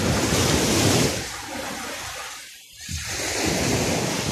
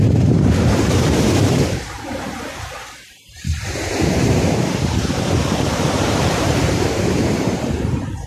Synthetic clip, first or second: second